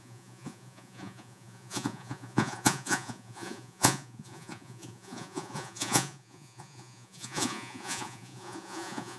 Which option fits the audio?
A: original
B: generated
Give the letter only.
B